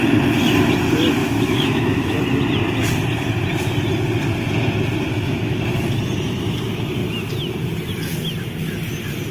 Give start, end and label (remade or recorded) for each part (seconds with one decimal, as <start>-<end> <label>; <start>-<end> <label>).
0.0-1.2 recorded; 1.2-2.2 remade; 2.2-5.1 recorded; 5.1-5.6 remade; 5.6-9.3 recorded